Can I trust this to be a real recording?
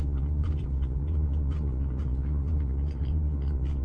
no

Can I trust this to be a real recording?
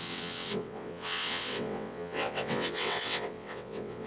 no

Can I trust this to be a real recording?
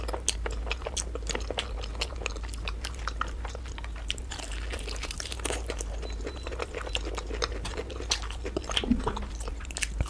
yes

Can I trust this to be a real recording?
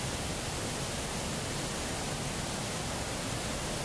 yes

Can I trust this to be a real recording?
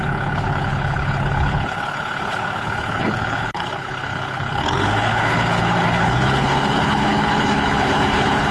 no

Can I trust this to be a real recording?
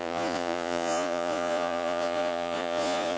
no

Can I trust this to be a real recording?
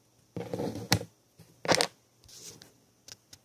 yes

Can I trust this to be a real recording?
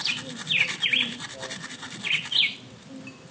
yes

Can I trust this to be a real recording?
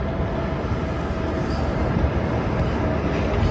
yes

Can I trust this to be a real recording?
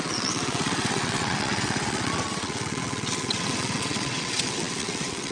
no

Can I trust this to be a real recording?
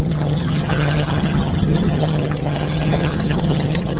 no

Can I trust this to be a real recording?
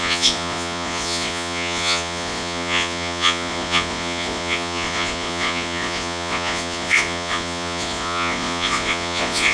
no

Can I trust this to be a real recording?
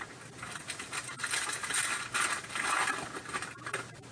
yes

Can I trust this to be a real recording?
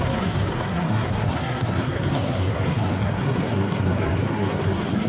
no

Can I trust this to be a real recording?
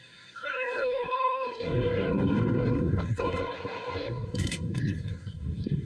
no